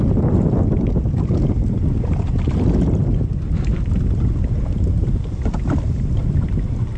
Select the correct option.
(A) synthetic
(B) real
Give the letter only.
B